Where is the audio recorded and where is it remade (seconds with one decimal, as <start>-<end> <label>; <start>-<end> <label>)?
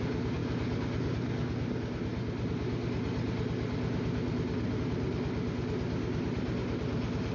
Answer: 0.0-7.3 recorded